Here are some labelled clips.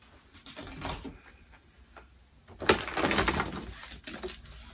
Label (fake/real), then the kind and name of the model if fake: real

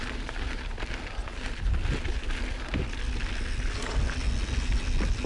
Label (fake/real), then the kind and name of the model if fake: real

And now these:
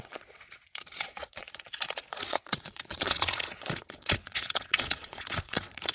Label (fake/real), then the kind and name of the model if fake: fake, vocoder, Vocos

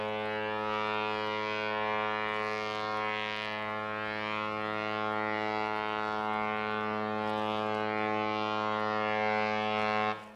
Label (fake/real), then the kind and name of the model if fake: real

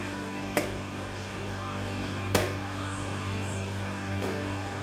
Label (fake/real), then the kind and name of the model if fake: fake, codec, DAC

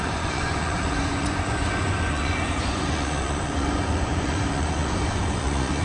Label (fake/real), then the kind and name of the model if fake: fake, vocoder, Vocos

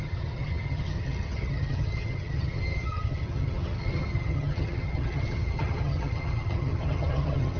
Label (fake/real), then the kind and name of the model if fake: fake, vocoder, HiFi-GAN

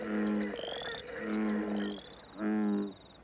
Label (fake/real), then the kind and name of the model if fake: real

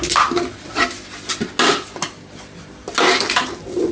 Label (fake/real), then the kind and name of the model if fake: real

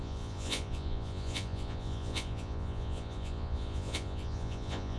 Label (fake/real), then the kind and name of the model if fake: fake, vocoder, Vocos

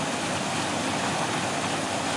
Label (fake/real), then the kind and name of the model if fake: real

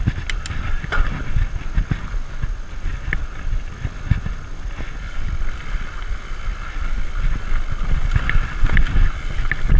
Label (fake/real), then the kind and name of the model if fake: real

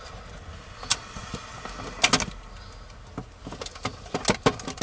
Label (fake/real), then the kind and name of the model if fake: real